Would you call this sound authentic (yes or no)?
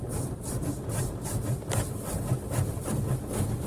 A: yes